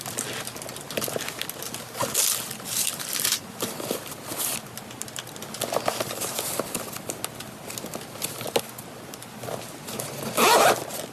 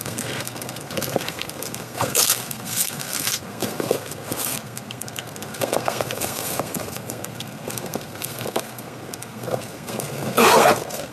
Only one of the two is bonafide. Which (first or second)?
first